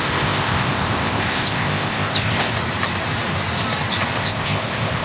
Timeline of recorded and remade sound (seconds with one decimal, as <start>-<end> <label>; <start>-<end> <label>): 0.0-2.5 remade; 2.5-4.2 recorded; 4.2-5.0 remade